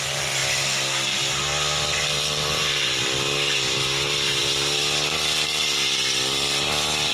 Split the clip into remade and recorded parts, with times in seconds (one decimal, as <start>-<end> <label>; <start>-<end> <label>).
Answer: 0.0-4.4 recorded; 4.4-7.1 remade